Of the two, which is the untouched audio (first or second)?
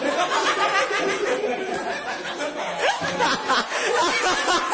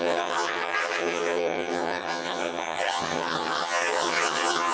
first